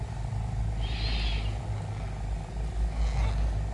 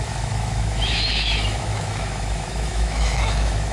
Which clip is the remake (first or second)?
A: second